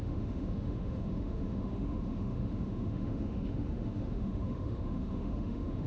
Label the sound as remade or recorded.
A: remade